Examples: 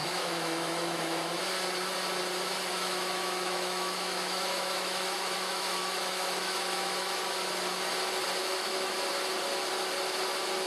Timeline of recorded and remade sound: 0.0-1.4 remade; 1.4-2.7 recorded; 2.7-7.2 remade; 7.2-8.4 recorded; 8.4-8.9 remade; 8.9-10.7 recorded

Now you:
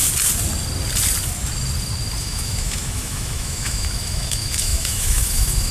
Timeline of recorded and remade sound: 0.0-2.2 recorded; 2.2-5.7 remade